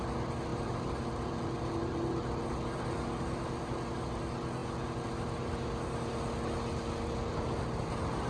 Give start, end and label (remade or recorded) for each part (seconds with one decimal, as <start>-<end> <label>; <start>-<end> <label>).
0.0-0.5 recorded; 0.5-1.0 remade; 1.0-8.3 recorded